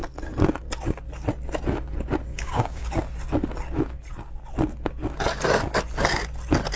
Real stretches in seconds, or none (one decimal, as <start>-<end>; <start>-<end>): 0.0-2.3; 2.9-6.8